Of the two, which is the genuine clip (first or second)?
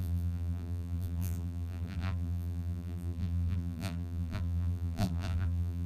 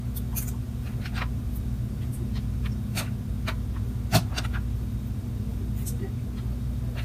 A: second